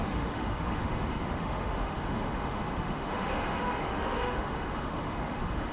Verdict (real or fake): fake